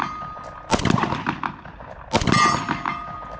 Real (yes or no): yes